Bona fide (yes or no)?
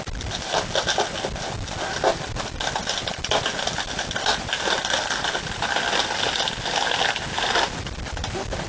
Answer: yes